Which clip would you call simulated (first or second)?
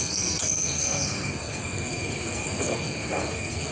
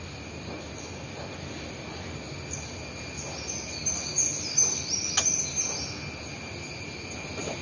first